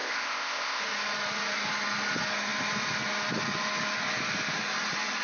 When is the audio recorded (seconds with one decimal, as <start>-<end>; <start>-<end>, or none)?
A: 0.8-5.2